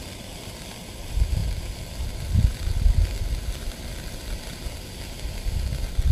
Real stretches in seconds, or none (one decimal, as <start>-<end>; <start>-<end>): 0.0-6.1